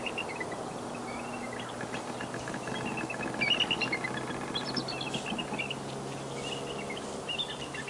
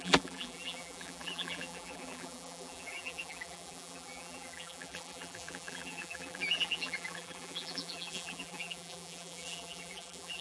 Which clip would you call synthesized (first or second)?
second